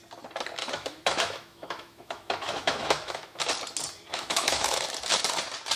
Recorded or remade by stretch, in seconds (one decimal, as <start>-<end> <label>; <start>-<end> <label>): 0.0-0.6 recorded; 0.6-3.4 remade; 3.4-4.1 recorded; 4.1-4.8 remade; 4.8-5.8 recorded

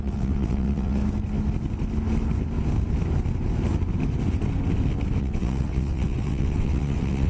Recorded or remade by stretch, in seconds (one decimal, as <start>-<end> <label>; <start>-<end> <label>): 0.0-1.0 remade; 1.0-5.2 recorded; 5.2-7.3 remade